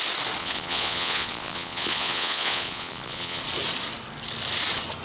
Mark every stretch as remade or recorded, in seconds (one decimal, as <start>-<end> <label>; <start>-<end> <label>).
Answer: 0.0-0.4 recorded; 0.4-3.4 remade; 3.4-5.0 recorded

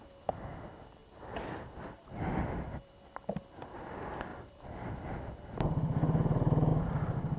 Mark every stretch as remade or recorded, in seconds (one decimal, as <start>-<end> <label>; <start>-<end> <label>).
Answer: 0.0-1.0 recorded; 1.0-2.6 remade; 2.6-4.3 recorded; 4.3-4.9 remade; 4.9-7.4 recorded

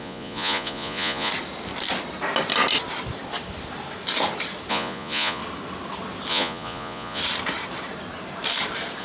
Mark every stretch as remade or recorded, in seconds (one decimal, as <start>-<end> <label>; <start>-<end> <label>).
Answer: 0.0-1.3 remade; 1.3-4.7 recorded; 4.7-5.4 remade; 5.4-6.3 recorded; 6.3-7.2 remade; 7.2-9.0 recorded